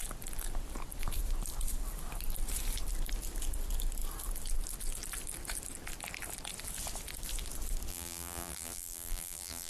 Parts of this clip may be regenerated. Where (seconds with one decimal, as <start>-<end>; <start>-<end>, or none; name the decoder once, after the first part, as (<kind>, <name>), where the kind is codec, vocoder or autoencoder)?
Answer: 7.9-9.7 (vocoder, BigVGAN v2)